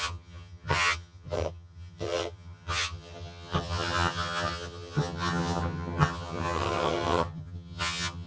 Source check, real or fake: fake